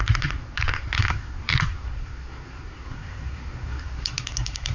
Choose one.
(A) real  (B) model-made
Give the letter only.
B